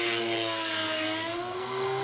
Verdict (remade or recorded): remade